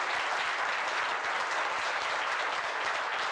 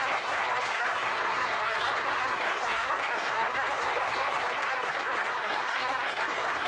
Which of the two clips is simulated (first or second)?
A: second